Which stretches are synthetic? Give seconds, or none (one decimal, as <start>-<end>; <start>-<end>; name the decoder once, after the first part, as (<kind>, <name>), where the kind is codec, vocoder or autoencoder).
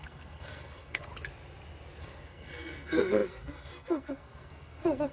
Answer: 0.0-1.1 (codec, SNAC); 2.0-5.1